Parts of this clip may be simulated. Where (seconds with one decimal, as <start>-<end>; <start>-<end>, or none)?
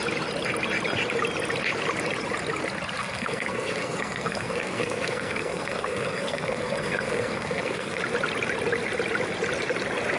3.0-8.0